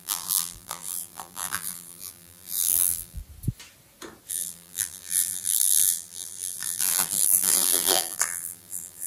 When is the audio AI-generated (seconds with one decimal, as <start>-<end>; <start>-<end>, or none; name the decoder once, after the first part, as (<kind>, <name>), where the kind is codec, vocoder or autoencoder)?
0.0-3.2 (vocoder, BigVGAN v2); 4.3-9.1